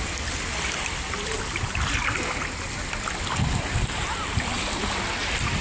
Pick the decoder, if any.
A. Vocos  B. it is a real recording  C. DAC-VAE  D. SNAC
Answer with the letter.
B